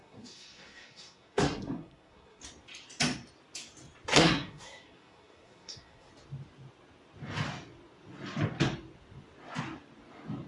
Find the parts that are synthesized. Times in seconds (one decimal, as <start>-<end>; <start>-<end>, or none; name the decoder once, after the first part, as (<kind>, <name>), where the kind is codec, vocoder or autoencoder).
0.0-2.4 (codec, SNAC); 4.1-6.1